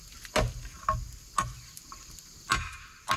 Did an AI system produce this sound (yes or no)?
no